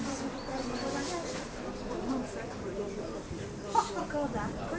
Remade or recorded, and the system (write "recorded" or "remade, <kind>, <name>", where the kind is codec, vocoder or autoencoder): recorded